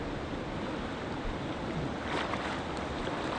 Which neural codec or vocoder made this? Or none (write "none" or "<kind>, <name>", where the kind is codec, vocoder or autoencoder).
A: none